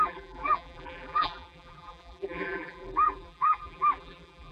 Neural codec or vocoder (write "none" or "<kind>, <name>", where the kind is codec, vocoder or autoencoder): vocoder, BigVGAN v2